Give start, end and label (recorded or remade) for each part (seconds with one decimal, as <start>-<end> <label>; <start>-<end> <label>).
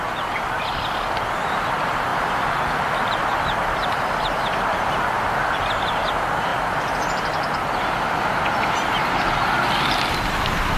0.0-6.5 remade; 6.5-9.8 recorded; 9.8-10.8 remade